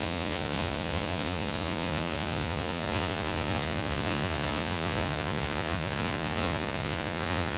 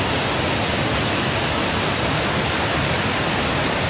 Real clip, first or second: second